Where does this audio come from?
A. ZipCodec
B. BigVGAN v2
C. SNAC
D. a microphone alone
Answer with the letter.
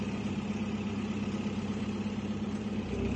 B